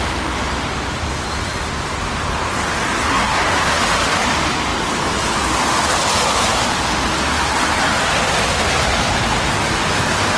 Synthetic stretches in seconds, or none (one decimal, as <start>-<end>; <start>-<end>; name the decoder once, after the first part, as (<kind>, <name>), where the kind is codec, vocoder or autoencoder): 3.1-3.7 (codec, SNAC)